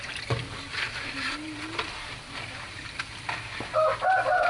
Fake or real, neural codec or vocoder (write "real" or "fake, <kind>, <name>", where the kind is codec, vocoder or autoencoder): real